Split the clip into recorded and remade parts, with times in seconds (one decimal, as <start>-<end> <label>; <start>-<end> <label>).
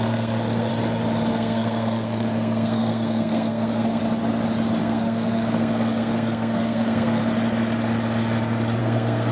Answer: 0.0-0.7 remade; 0.7-1.3 recorded; 1.3-4.0 remade; 4.0-4.8 recorded; 4.8-7.2 remade; 7.2-8.8 recorded; 8.8-9.3 remade